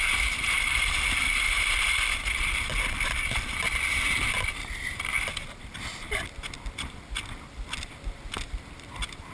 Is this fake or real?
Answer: real